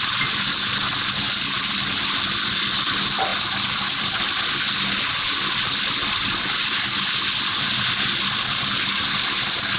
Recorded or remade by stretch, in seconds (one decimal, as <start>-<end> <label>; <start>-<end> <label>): 0.0-9.8 recorded